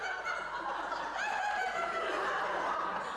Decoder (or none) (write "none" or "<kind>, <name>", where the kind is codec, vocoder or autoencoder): none